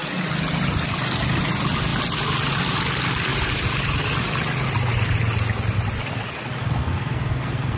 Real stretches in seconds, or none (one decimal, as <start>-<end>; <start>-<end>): 0.0-6.6